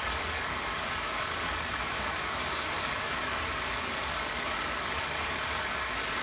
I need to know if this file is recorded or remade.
remade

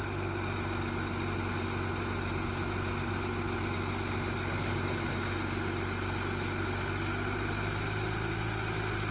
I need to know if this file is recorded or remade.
recorded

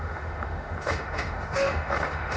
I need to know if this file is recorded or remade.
remade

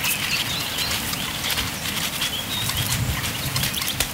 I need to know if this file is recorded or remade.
remade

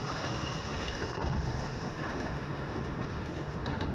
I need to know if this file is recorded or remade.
remade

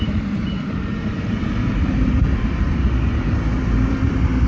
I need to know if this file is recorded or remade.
remade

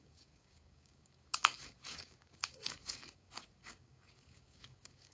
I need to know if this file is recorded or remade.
remade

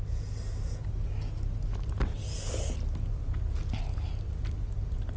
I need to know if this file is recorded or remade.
recorded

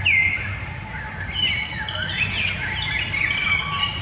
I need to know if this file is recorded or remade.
recorded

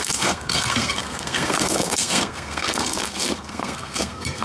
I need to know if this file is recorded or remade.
remade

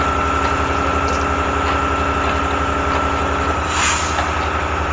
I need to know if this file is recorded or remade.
recorded